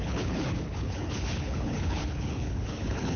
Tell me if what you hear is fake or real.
fake